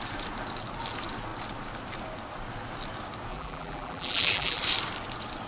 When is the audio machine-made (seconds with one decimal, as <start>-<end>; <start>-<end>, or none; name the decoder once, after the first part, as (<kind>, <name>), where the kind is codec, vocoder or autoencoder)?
3.3-4.6 (vocoder, BigVGAN v2)